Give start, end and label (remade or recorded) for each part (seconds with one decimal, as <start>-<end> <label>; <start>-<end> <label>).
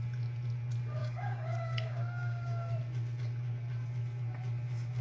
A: 0.0-1.0 recorded; 1.0-2.7 remade; 2.7-5.0 recorded